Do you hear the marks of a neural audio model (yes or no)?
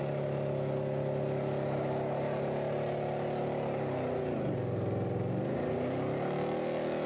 no